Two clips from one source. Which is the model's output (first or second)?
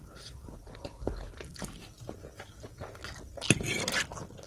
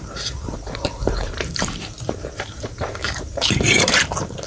second